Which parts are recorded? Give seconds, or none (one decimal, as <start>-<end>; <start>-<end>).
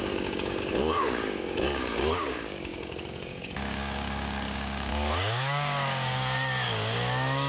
none